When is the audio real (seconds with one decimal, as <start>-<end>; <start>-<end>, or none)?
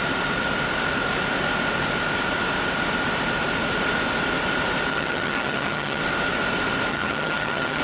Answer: 0.0-4.9; 6.0-6.9